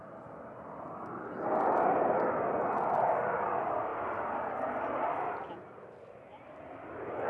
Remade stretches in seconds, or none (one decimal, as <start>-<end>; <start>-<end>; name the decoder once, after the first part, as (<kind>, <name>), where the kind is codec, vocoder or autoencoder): none